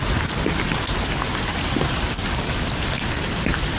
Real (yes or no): yes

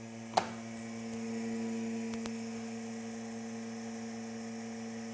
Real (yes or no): yes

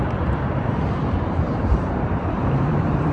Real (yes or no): no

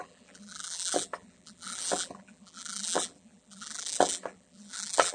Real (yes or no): no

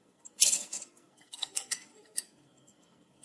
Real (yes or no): no